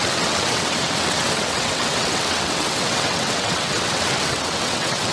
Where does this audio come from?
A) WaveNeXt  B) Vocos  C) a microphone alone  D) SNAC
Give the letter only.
A